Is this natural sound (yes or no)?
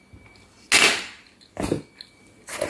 yes